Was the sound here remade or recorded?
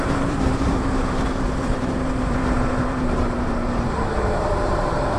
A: remade